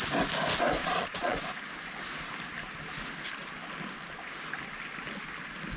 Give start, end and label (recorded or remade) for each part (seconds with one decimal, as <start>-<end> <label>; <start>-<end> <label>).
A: 0.0-0.8 recorded; 0.8-1.4 remade; 1.4-5.8 recorded